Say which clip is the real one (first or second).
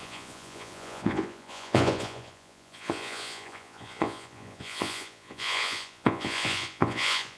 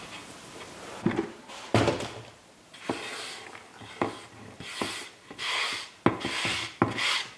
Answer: second